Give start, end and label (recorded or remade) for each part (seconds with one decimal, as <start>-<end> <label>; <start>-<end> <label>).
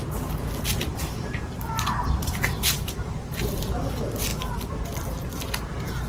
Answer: 0.0-0.9 recorded; 0.9-1.6 remade; 1.6-2.2 recorded; 2.2-3.8 remade; 3.8-6.1 recorded